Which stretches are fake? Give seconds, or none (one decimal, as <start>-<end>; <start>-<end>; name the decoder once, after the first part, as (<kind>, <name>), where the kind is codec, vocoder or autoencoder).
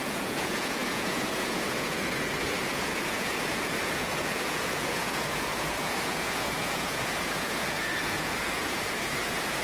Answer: 0.0-9.6 (vocoder, Vocos)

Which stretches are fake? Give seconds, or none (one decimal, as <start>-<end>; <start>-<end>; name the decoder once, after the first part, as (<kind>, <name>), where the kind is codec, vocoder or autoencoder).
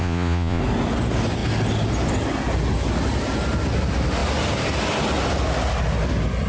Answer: 0.0-0.6 (vocoder, Vocos)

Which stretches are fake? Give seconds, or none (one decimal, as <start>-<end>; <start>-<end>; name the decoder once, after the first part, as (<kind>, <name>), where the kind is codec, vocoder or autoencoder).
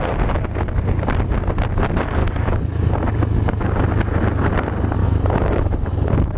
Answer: 2.2-2.9 (autoencoder, DAC-VAE); 5.0-5.9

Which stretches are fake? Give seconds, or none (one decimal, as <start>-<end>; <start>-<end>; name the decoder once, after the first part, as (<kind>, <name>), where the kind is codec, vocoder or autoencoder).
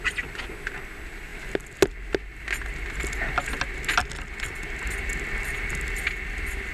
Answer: none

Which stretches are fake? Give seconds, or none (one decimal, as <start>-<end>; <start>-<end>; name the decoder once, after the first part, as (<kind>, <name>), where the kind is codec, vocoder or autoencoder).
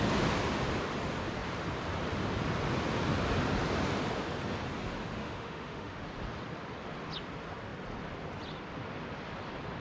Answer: 5.2-6.0 (autoencoder, DAC-VAE)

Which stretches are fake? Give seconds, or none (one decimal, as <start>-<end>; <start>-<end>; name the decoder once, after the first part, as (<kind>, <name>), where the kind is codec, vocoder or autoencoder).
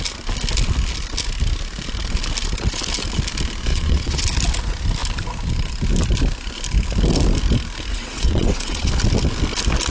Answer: 3.7-4.2 (vocoder, WaveNeXt); 7.9-8.9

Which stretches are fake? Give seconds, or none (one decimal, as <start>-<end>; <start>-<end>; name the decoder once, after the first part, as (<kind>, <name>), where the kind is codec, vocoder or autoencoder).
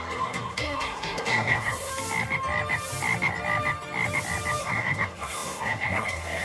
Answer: 0.0-1.9 (codec, SNAC); 4.6-6.4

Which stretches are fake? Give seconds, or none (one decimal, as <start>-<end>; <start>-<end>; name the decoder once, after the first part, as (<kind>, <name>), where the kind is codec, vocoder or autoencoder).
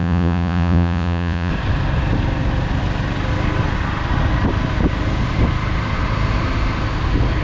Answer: 0.0-1.5 (vocoder, Vocos)